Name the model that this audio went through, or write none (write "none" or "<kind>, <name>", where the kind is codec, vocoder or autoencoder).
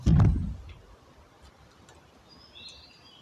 none